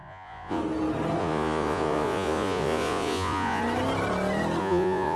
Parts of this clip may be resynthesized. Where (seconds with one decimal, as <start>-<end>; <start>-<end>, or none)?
0.0-0.6; 1.2-3.6; 4.6-5.2